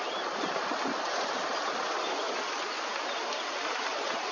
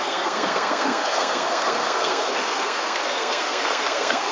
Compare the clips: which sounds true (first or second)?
first